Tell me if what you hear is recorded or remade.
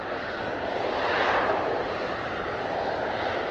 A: recorded